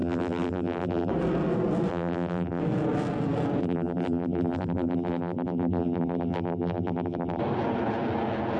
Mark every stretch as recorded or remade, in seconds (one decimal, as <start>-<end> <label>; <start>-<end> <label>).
0.0-1.1 remade; 1.1-1.9 recorded; 1.9-2.6 remade; 2.6-3.6 recorded; 3.6-7.4 remade; 7.4-8.6 recorded